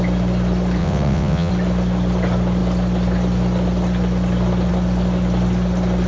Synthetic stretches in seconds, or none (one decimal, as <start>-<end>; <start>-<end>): 0.8-1.5